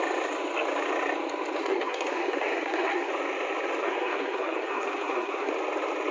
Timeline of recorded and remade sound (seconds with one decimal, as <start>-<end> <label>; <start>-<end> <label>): 0.0-1.6 recorded; 1.6-3.1 remade; 3.1-3.8 recorded; 3.8-5.5 remade; 5.5-6.1 recorded